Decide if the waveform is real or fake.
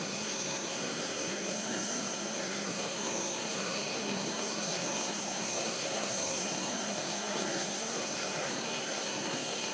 fake